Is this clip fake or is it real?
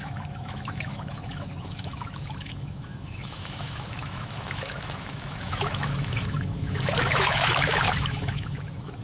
fake